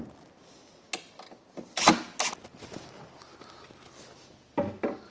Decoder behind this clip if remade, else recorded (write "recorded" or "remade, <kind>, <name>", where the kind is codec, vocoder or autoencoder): recorded